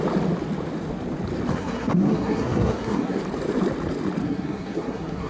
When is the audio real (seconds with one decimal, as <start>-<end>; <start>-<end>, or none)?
0.0-1.5; 3.2-4.2

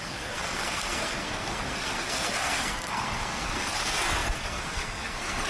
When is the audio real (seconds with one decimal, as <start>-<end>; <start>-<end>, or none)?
none